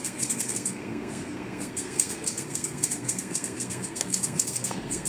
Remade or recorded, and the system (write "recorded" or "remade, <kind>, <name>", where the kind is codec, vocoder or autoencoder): remade, codec, SNAC